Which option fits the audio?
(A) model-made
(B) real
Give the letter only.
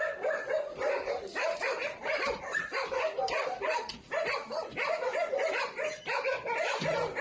A